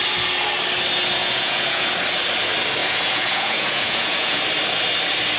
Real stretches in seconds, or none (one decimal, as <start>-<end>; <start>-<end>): 0.0-1.2; 1.9-2.8; 4.4-5.4